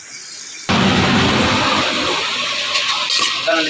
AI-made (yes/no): no